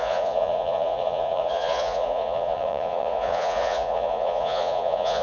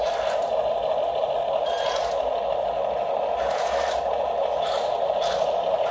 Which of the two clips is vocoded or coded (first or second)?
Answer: first